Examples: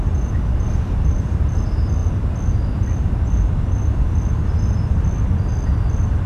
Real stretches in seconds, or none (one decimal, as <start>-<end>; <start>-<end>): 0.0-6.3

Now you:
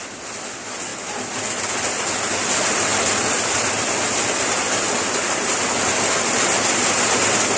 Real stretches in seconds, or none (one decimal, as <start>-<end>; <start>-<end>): 0.0-2.9; 4.6-7.6

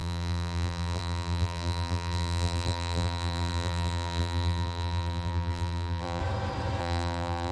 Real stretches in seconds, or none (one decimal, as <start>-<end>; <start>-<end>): 6.2-6.8

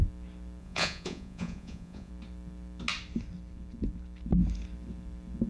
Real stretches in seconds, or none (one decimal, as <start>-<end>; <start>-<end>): 0.0-0.6; 2.1-5.5

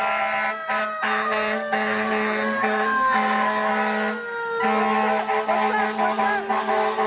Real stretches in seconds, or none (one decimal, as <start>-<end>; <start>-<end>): 0.0-0.8; 3.7-7.1

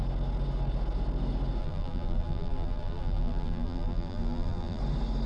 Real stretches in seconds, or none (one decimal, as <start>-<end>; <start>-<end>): 0.0-1.6; 4.8-5.3

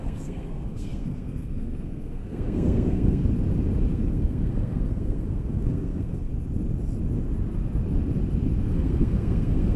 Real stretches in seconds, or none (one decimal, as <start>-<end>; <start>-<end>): 3.2-3.9; 6.3-8.6